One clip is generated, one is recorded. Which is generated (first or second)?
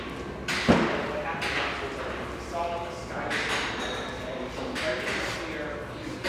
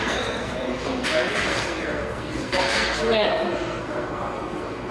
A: second